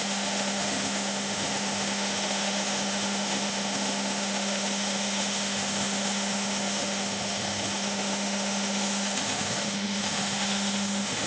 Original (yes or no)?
no